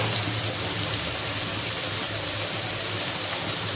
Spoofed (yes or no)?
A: no